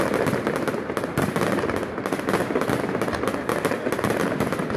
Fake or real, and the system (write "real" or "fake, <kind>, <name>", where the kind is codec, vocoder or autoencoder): real